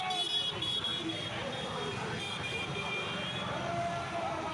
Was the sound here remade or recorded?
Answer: recorded